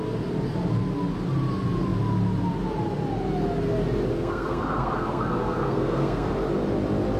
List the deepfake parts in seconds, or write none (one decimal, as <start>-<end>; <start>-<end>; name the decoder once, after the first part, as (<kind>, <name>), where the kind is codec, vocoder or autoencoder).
4.1-6.3 (codec, SNAC)